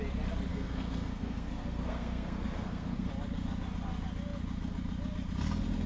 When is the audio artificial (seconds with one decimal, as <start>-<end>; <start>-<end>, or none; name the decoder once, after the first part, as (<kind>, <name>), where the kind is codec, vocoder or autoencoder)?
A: 0.5-3.1 (codec, SNAC)